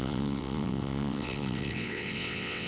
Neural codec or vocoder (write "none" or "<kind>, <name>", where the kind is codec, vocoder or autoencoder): vocoder, WaveNeXt